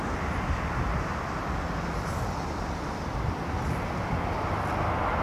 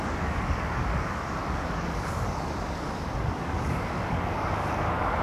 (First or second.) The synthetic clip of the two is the second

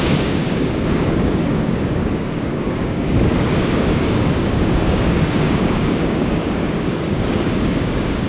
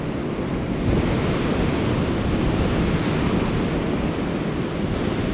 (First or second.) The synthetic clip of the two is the first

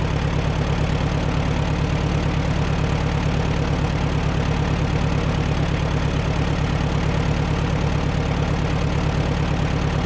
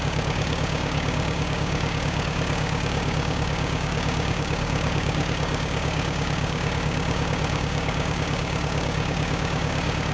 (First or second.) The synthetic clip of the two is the second